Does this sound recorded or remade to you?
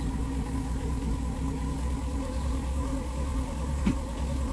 remade